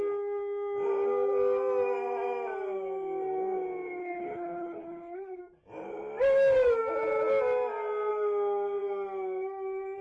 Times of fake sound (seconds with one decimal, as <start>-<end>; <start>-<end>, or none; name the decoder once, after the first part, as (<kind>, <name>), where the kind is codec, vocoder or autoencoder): 4.0-5.4 (codec, HILCodec)